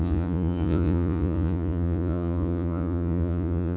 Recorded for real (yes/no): no